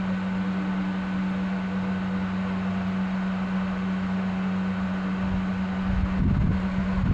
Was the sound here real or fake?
real